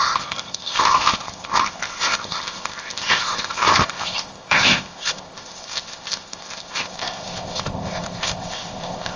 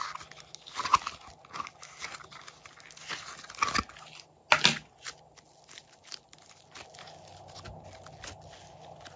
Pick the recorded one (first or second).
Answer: second